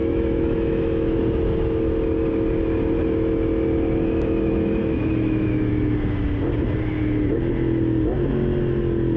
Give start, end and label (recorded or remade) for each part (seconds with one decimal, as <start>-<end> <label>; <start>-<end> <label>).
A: 0.0-1.2 remade; 1.2-4.8 recorded; 4.8-5.7 remade; 5.7-9.2 recorded